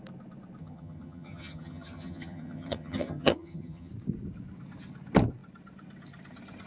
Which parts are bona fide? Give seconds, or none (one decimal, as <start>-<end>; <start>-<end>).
0.0-0.6; 3.9-6.7